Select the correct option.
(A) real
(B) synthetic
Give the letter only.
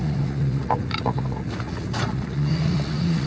B